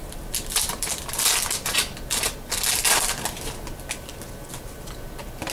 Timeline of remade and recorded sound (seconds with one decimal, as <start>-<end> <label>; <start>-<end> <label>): 0.0-5.5 recorded